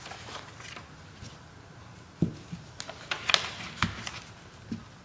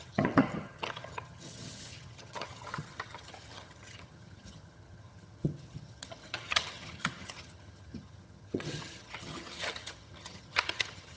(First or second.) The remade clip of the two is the second